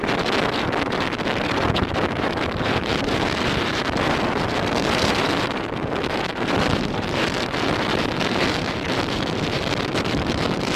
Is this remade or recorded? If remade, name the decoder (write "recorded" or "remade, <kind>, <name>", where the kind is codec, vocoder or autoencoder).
remade, vocoder, BigVGAN v2